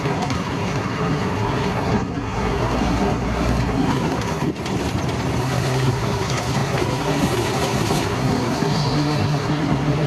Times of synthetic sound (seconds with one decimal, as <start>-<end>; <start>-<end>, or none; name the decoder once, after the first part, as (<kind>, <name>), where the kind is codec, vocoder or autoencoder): 0.0-4.5 (codec, SNAC); 5.4-10.1